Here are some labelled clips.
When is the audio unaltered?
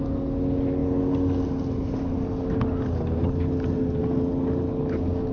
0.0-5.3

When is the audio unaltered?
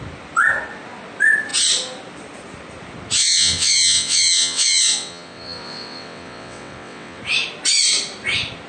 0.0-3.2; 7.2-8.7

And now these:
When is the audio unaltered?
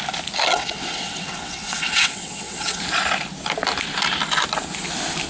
0.0-0.5; 2.8-5.3